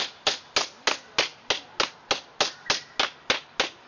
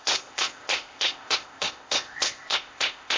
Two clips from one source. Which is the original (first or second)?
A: first